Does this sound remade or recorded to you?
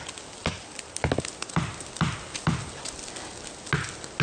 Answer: recorded